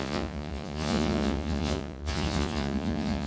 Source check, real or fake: fake